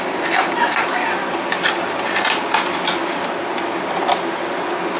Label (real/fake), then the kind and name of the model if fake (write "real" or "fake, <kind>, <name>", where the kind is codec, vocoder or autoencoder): real